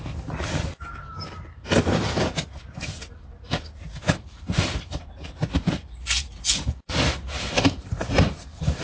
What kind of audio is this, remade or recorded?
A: remade